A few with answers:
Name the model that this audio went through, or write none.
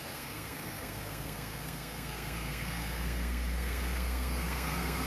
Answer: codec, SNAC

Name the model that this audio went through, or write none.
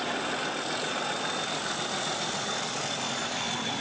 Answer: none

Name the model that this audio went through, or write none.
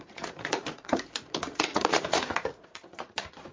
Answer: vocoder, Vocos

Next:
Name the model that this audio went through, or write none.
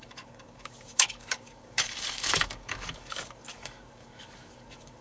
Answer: codec, DAC